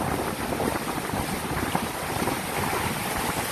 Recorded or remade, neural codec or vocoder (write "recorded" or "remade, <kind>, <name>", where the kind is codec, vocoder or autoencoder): remade, vocoder, BigVGAN v2